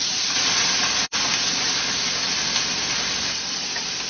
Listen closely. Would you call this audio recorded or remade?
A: remade